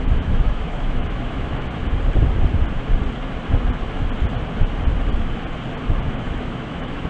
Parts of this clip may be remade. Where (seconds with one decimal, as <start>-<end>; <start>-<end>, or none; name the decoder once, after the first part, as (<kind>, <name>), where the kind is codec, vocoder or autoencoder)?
0.0-1.8 (autoencoder, DAC-VAE); 6.0-7.1